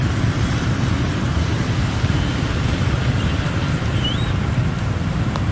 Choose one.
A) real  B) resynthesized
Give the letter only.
A